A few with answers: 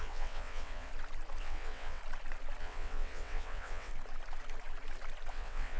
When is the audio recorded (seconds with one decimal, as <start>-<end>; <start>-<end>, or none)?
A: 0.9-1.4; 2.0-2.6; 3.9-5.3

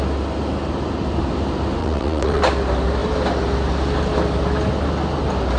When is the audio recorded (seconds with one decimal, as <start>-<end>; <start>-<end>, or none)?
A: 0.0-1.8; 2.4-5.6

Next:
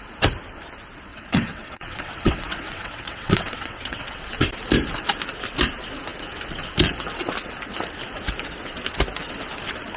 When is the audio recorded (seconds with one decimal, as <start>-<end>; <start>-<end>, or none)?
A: 0.0-1.1; 4.2-10.0

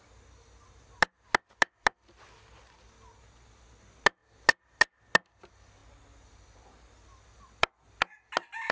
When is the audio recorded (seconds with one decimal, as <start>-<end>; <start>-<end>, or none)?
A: 0.0-8.7

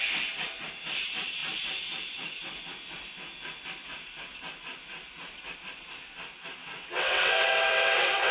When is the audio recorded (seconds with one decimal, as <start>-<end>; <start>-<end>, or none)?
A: 0.0-6.6

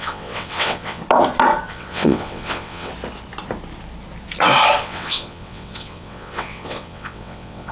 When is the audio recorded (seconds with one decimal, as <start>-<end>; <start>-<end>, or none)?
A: 1.0-1.7; 2.9-4.8